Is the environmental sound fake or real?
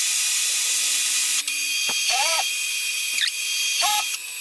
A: fake